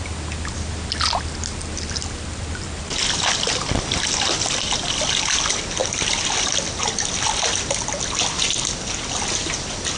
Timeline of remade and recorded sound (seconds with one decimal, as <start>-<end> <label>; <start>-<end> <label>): 0.0-10.0 recorded